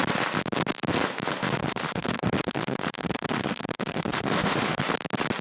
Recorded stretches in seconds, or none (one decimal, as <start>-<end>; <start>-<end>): 0.0-1.6; 4.8-5.4